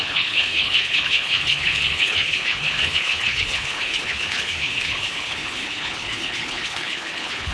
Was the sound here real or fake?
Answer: fake